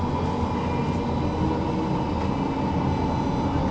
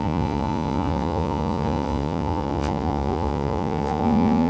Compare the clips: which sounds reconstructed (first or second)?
second